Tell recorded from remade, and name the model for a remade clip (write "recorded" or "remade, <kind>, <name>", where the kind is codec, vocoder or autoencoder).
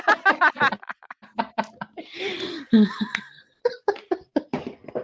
recorded